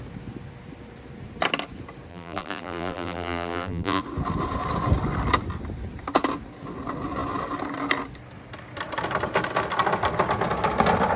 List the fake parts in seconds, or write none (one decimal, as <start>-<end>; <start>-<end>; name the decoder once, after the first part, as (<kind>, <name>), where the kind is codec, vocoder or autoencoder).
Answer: 2.1-4.0 (vocoder, BigVGAN v2)